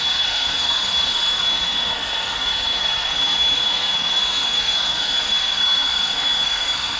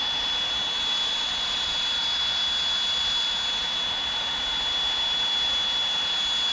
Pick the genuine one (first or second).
second